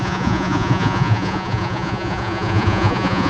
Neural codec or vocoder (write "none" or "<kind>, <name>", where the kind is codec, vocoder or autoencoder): vocoder, Vocos